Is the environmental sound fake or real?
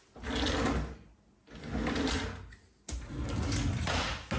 real